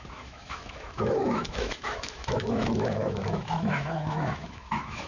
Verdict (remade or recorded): remade